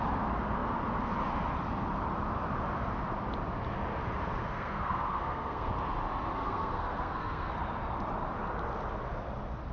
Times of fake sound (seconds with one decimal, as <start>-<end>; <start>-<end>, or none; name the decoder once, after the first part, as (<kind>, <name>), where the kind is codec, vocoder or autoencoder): 4.4-5.7 (codec, SNAC); 6.3-7.5